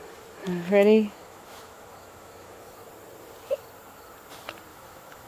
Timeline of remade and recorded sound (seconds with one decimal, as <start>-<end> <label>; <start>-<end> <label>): 0.0-0.4 recorded; 0.4-2.9 remade; 2.9-4.7 recorded; 4.7-5.3 remade